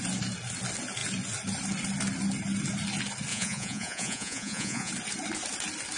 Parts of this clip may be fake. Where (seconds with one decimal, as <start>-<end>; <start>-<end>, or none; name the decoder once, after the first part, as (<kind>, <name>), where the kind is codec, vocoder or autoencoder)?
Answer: 3.3-4.9 (vocoder, Vocos)